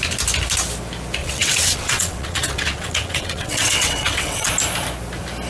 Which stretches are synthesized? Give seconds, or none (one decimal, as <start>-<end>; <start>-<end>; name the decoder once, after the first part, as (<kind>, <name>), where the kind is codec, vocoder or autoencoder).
1.2-4.5 (vocoder, WaveNeXt)

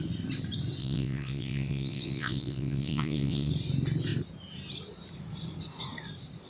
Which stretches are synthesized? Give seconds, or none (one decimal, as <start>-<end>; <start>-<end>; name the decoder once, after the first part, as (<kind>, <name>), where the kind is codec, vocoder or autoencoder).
0.8-3.5 (vocoder, WaveNeXt)

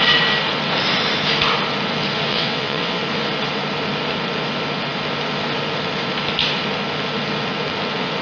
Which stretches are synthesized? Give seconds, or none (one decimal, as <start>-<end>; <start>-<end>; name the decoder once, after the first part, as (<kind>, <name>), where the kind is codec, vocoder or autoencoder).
2.3-3.0 (vocoder, WaveNeXt)

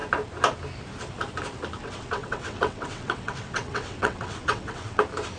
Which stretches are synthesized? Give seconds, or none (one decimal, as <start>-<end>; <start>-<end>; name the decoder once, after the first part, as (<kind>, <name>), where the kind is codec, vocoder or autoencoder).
1.8-5.0 (vocoder, WaveNeXt)

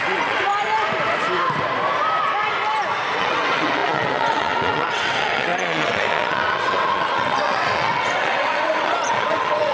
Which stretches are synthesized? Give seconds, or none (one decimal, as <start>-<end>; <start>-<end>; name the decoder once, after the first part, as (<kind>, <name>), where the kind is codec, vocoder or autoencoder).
0.0-0.5 (vocoder, WaveNeXt); 3.2-9.7

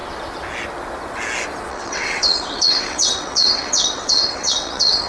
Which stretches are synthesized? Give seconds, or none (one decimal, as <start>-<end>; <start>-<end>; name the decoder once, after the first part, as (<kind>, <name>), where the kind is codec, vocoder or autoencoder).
1.7-5.1 (vocoder, WaveNeXt)